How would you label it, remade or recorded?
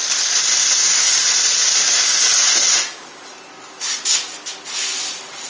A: recorded